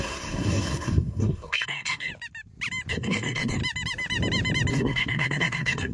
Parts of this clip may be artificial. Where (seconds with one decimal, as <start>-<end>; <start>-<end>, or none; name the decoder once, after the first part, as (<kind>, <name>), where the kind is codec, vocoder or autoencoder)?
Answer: 0.0-2.1 (codec, SNAC); 2.9-3.6; 4.7-5.9